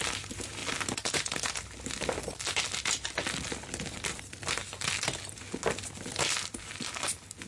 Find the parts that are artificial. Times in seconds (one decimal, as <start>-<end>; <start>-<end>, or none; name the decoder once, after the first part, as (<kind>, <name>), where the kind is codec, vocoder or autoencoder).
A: none